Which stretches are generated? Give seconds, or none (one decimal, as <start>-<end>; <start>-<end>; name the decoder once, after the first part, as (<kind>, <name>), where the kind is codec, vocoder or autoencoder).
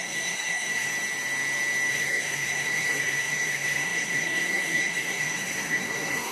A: 0.0-0.9 (codec, SNAC); 1.9-6.3